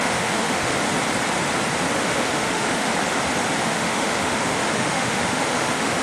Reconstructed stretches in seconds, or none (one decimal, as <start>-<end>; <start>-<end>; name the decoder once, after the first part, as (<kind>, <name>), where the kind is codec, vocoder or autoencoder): 0.0-0.7 (autoencoder, DAC-VAE); 2.0-2.9; 3.6-6.0